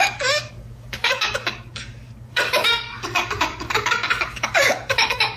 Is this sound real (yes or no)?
no